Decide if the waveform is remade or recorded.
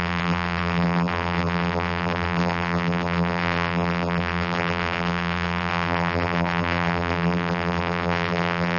remade